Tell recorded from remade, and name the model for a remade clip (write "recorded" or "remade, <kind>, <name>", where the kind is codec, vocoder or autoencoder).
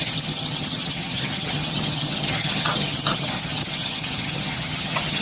remade, vocoder, HiFi-GAN